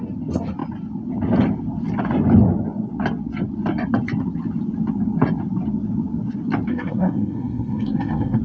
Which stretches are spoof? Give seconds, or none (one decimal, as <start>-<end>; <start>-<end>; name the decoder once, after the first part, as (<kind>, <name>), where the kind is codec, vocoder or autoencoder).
6.7-8.4 (codec, SNAC)